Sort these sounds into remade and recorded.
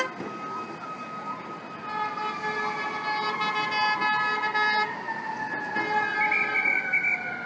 recorded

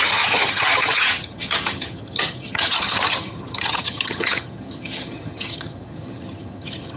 remade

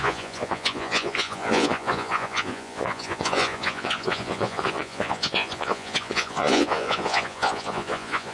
remade